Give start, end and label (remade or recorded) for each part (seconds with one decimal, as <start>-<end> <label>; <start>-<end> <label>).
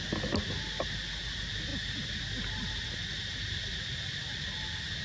0.0-5.0 recorded